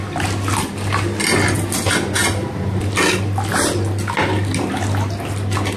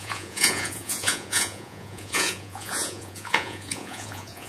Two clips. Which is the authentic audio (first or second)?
first